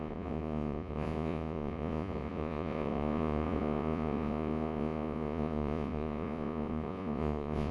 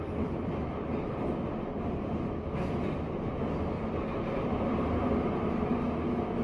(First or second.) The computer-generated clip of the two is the first